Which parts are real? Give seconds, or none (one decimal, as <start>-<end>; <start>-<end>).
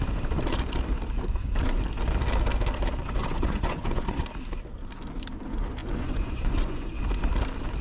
0.0-3.2; 4.2-5.8; 7.0-7.8